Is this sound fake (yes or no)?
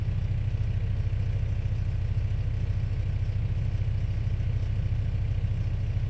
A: no